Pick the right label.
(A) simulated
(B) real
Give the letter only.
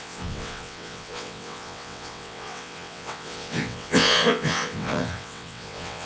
A